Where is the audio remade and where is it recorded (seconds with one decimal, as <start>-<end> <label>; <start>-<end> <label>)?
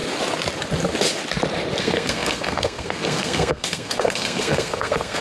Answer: 0.0-1.8 recorded; 1.8-5.2 remade